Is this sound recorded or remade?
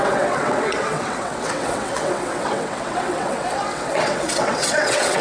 remade